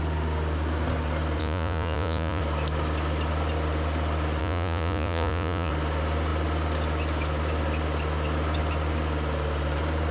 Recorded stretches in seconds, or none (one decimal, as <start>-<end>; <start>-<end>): 0.0-1.4; 2.4-4.4; 5.7-10.1